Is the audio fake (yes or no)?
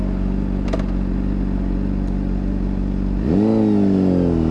no